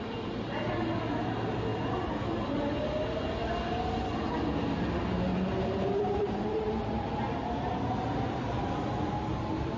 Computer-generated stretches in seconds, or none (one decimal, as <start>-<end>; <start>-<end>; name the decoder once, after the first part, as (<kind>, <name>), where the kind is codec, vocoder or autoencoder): 5.3-7.2 (vocoder, BigVGAN v2)